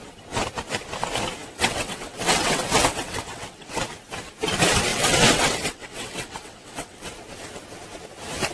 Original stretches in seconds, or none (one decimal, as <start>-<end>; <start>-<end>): 0.0-1.4; 3.8-4.9; 7.1-8.5